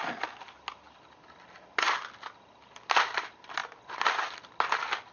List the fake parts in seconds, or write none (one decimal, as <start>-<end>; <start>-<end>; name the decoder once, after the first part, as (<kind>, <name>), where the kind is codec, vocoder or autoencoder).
none